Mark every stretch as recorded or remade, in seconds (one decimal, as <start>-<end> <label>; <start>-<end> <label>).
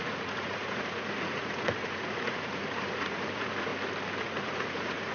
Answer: 0.0-3.7 remade; 3.7-4.2 recorded; 4.2-5.1 remade